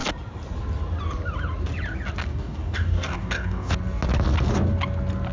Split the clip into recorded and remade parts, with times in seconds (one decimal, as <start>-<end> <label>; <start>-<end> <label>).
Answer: 0.0-2.3 recorded; 2.3-3.7 remade; 3.7-5.3 recorded